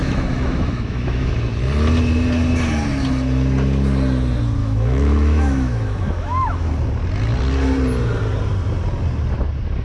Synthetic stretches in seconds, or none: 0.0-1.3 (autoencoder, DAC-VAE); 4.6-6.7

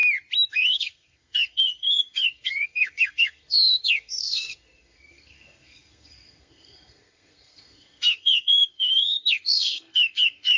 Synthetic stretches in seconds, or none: 0.5-10.6 (codec, SNAC)

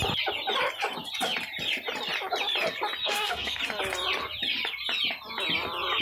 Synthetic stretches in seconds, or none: 3.0-3.6 (codec, SNAC)

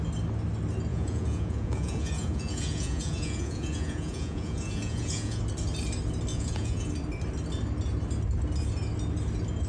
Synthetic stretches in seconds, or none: 0.9-5.4 (vocoder, Vocos); 6.3-6.9